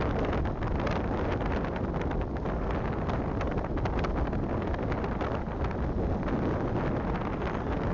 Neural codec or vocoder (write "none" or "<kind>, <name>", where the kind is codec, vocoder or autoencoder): none